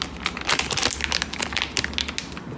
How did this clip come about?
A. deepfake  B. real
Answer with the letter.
B